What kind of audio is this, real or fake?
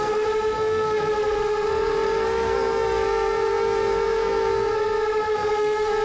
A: fake